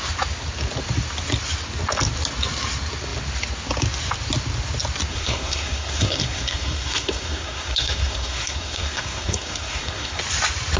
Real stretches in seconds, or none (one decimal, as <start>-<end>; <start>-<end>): 0.0-5.1; 10.2-10.8